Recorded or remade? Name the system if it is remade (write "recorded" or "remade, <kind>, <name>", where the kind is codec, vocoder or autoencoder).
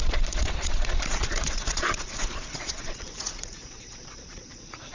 remade, vocoder, Vocos